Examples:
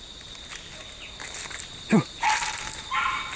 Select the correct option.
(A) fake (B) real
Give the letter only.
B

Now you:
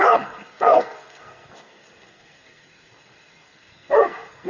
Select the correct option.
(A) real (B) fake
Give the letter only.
B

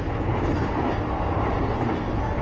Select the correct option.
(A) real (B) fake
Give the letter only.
A